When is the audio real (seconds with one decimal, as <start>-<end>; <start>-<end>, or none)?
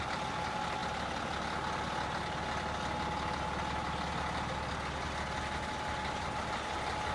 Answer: 0.0-7.1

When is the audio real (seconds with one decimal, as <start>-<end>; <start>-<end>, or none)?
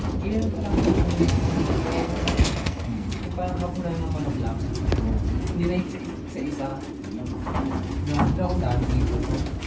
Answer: 0.0-1.2; 3.2-9.7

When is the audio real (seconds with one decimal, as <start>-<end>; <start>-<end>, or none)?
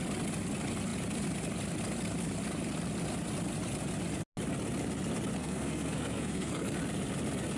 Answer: 0.0-5.4; 6.8-7.6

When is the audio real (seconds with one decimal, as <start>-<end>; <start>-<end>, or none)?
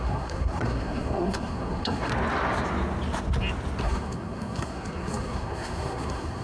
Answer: 2.1-3.8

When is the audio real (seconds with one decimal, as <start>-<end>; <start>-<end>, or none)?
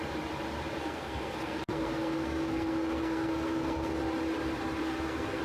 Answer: 0.0-0.8; 4.0-4.8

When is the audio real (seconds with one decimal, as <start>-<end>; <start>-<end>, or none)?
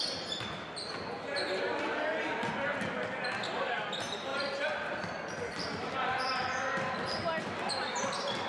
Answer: 0.0-8.5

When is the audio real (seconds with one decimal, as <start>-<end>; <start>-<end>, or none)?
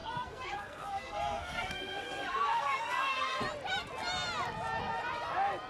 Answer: 3.4-5.7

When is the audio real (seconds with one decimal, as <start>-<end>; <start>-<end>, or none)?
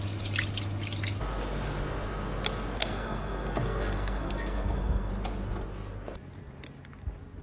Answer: 0.0-2.8; 5.1-7.4